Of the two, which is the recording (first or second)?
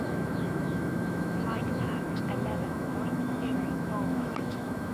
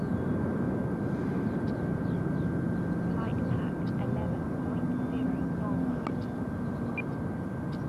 second